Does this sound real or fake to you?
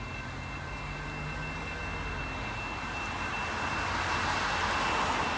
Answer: real